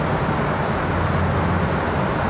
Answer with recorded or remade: recorded